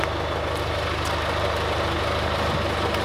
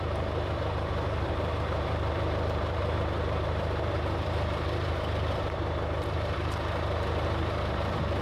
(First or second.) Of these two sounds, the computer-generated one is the second